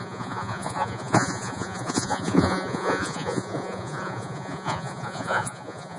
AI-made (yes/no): yes